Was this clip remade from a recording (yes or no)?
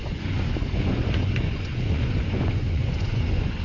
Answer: yes